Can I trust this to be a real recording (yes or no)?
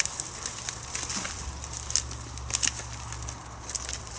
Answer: yes